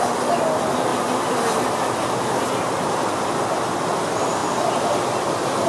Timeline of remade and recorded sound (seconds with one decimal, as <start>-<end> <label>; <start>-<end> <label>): 0.0-5.7 recorded